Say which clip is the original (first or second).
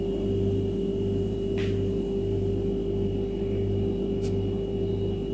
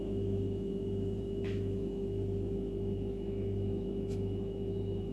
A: first